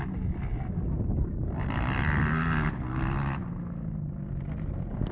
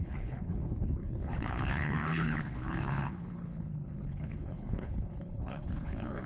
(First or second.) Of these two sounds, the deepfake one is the second